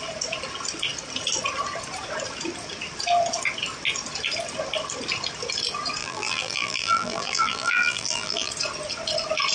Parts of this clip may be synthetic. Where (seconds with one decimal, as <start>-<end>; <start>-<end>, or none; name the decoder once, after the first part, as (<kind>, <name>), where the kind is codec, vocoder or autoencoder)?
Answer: 6.0-8.5 (vocoder, BigVGAN v2)